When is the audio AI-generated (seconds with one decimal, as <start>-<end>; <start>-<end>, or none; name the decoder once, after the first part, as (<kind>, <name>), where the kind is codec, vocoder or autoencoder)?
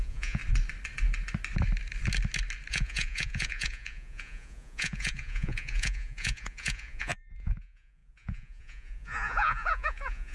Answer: 0.0-0.4 (vocoder, Vocos); 2.7-10.3